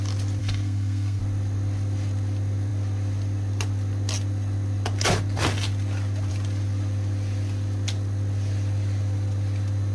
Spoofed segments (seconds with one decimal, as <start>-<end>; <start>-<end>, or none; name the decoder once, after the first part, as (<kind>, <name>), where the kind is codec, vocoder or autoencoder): 0.4-1.2 (codec, SNAC)

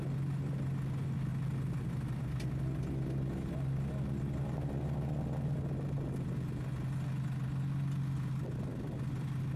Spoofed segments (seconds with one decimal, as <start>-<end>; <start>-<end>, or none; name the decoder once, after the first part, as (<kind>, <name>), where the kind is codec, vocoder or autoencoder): none

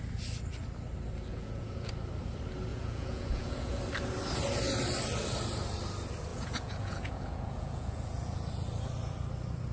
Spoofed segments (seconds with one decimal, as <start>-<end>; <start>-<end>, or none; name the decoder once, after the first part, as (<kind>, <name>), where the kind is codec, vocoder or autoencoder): 1.3-1.9 (vocoder, Vocos); 2.7-3.8; 6.3-8.5

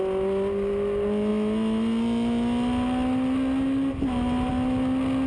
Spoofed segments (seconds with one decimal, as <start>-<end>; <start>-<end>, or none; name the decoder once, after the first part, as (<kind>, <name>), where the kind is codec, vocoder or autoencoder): none

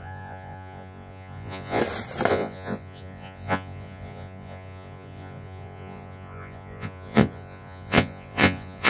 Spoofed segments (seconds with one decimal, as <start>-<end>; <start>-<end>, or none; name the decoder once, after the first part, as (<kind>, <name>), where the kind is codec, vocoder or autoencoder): 0.0-1.8 (vocoder, Vocos); 2.3-8.9

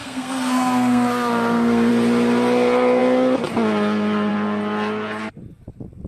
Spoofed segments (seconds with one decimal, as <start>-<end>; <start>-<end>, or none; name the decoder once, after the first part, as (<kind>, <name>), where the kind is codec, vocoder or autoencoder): 0.0-1.9 (codec, SNAC)